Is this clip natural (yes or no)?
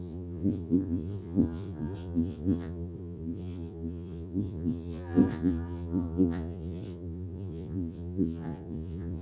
no